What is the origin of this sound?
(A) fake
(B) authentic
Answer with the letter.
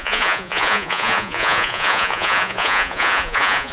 A